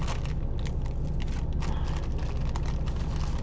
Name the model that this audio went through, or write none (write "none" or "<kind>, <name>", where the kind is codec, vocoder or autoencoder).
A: none